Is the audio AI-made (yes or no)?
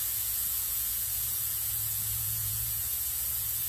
yes